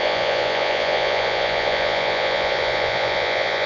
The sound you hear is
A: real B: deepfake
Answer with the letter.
B